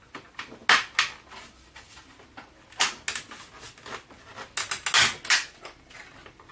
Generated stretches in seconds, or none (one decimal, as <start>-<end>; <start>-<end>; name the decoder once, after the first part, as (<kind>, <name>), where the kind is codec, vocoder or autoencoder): none

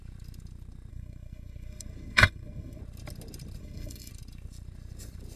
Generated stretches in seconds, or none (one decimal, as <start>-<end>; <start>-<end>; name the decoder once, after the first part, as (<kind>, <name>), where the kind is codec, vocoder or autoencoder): 0.9-2.8 (codec, SNAC); 3.6-4.1

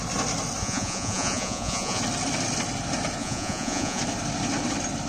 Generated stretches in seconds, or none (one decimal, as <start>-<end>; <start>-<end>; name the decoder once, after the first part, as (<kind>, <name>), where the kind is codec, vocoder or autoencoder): 0.6-2.0 (vocoder, Vocos); 3.2-4.0

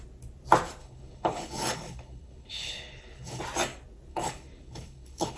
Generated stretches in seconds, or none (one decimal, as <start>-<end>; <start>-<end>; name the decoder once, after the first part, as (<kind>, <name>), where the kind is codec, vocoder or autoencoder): 0.8-3.4 (codec, HILCodec); 4.1-5.4